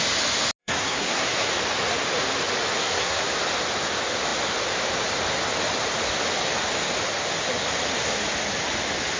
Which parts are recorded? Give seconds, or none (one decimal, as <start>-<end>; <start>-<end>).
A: 0.0-0.6; 1.5-2.8; 3.3-9.2